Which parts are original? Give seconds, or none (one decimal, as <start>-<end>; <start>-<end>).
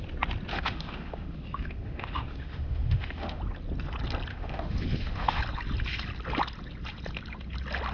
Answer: 0.0-0.5; 3.4-4.3; 5.4-7.9